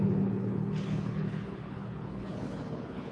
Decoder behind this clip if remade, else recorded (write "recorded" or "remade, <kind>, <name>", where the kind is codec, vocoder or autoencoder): remade, codec, HILCodec